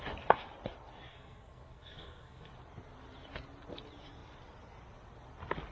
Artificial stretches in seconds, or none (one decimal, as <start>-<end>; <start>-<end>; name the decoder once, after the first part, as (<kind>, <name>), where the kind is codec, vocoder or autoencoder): 1.1-2.5 (codec, SNAC)